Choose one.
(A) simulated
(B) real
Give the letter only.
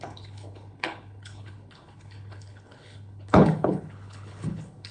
A